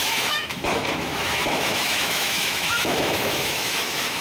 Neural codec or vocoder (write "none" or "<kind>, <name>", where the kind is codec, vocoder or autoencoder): autoencoder, DAC-VAE